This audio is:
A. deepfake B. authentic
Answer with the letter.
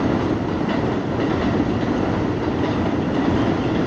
B